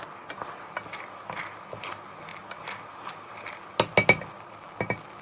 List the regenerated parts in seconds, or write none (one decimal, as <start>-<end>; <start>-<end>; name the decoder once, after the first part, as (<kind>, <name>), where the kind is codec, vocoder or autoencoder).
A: none

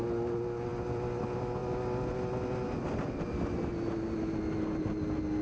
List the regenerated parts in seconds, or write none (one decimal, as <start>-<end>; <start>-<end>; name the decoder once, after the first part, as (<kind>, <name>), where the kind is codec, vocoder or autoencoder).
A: none